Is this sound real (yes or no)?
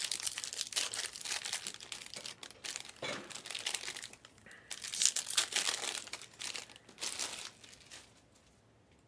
yes